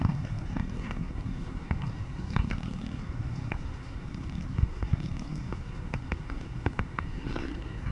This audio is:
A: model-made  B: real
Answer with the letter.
A